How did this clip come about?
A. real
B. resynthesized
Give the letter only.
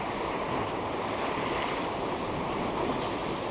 A